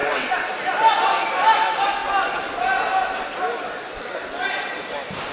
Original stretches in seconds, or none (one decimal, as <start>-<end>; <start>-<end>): 0.5-5.3